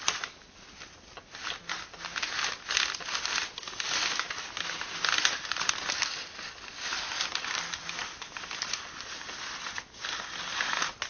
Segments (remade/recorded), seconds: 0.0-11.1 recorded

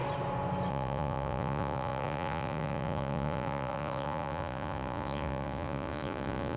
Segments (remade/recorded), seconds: 0.0-0.7 recorded; 0.7-6.6 remade

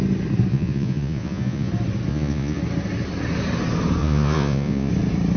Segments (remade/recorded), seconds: 0.0-0.5 recorded; 0.5-1.7 remade; 1.7-2.1 recorded; 2.1-2.6 remade; 2.6-4.0 recorded; 4.0-4.9 remade; 4.9-5.4 recorded

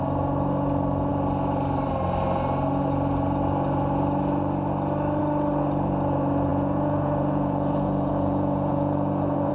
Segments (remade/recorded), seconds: 0.0-6.5 recorded; 6.5-9.5 remade

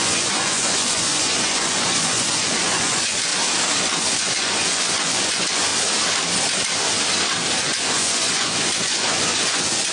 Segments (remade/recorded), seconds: 0.0-3.3 remade; 3.3-4.0 recorded; 4.0-5.7 remade; 5.7-7.6 recorded; 7.6-9.9 remade

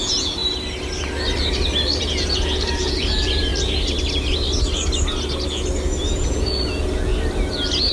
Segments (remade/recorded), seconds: 0.0-0.4 remade; 0.4-2.0 recorded; 2.0-3.5 remade; 3.5-6.0 recorded; 6.0-7.1 remade; 7.1-7.9 recorded

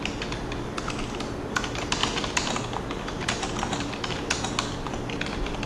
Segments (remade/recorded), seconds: 0.0-5.7 recorded

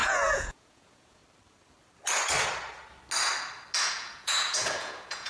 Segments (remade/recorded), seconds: 0.0-1.2 remade; 1.2-3.8 recorded; 3.8-5.3 remade